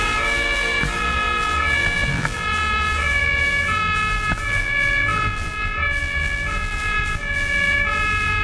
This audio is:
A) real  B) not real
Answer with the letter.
B